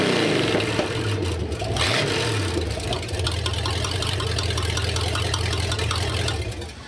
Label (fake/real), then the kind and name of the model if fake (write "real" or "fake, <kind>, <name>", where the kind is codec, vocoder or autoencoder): real